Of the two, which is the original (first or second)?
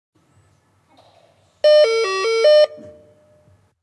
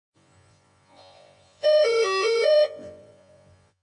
first